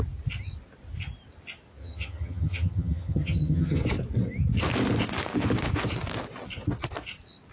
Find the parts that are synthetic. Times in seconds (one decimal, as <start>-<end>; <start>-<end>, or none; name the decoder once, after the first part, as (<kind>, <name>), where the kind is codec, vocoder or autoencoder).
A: 1.8-3.8 (vocoder, HiFi-GAN)